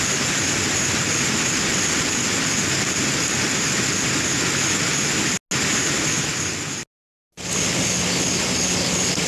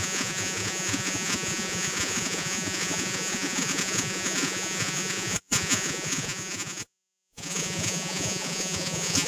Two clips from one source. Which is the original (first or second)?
first